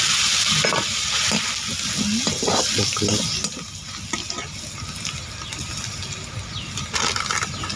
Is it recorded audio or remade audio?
recorded